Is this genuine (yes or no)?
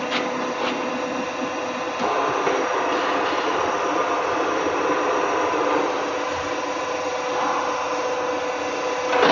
yes